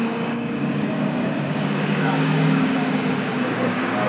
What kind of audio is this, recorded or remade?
remade